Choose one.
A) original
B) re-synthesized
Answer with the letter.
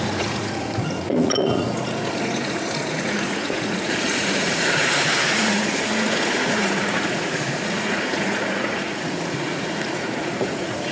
B